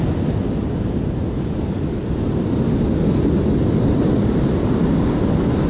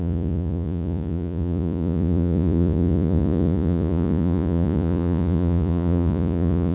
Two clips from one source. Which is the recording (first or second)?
first